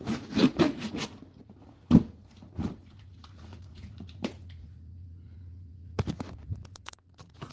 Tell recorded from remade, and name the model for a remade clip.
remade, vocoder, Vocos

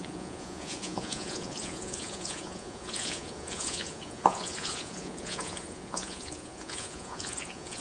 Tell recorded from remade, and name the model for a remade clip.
remade, vocoder, Vocos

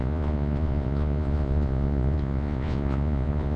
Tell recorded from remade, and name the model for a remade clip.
remade, vocoder, Vocos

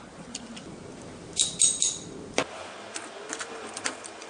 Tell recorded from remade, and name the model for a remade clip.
recorded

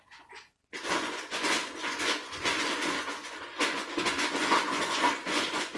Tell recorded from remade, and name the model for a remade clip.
remade, vocoder, Vocos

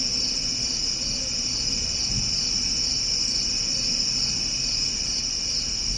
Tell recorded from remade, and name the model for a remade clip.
recorded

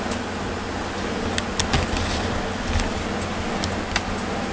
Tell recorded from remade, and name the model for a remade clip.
recorded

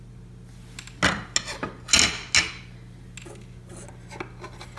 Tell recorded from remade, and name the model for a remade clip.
recorded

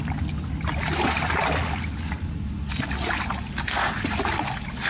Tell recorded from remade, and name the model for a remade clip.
recorded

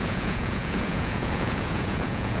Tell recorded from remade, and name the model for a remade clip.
remade, vocoder, Vocos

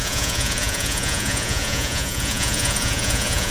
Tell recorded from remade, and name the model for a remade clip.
remade, vocoder, Vocos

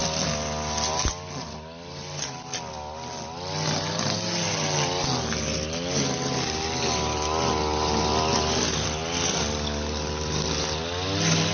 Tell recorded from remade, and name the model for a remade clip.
recorded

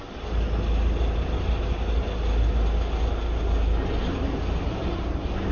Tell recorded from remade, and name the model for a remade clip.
recorded